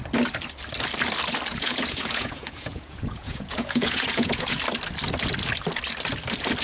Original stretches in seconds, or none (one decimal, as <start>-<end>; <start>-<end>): 0.0-1.5; 4.6-6.6